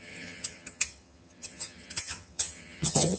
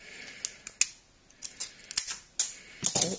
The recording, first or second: second